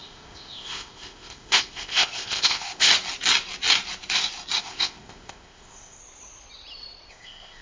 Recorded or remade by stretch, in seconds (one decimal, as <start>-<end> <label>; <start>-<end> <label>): 0.0-2.9 remade; 2.9-4.6 recorded; 4.6-6.0 remade; 6.0-7.1 recorded; 7.1-7.6 remade